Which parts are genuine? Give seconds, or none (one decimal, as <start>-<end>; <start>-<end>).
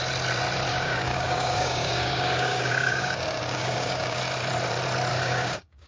0.0-0.7; 4.2-5.1